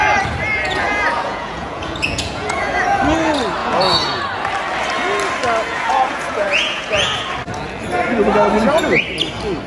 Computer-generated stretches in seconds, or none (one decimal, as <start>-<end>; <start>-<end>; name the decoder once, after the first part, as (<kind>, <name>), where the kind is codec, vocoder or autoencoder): 0.5-3.0 (vocoder, Vocos); 3.6-4.2; 5.7-7.3